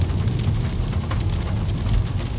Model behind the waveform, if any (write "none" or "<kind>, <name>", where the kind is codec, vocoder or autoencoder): none